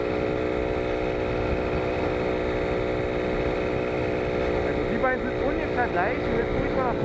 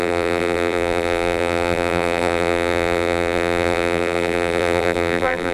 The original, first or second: first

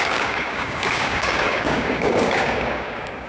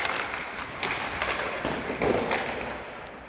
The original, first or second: second